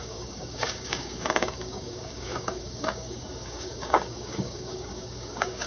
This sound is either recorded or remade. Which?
remade